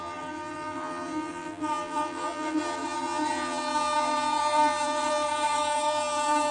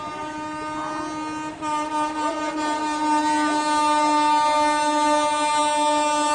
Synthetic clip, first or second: first